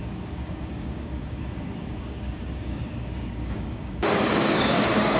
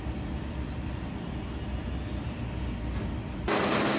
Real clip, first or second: second